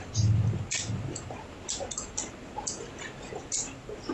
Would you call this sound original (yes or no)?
yes